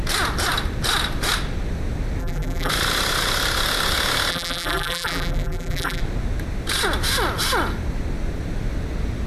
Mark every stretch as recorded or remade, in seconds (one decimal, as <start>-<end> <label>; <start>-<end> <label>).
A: 0.0-2.2 recorded; 2.2-2.7 remade; 2.7-4.3 recorded; 4.3-6.0 remade; 6.0-9.3 recorded